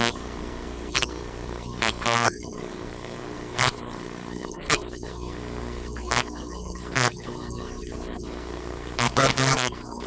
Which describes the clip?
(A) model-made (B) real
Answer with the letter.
A